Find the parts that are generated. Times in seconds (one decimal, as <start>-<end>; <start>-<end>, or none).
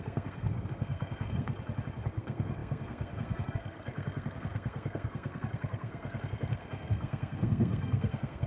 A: 0.0-1.5; 2.2-8.5